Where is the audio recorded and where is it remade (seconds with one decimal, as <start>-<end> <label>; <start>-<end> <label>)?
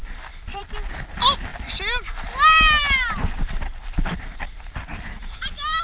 0.0-5.8 recorded